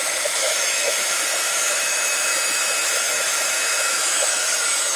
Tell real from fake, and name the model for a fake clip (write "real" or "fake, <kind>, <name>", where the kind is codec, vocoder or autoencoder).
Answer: fake, autoencoder, DAC-VAE